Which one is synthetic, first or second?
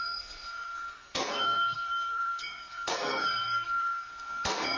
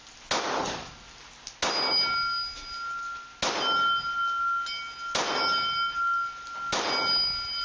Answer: first